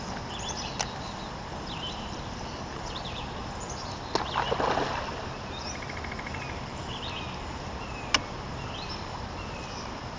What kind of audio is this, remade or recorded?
recorded